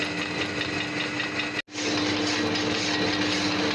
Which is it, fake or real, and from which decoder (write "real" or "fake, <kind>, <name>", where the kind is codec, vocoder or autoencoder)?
real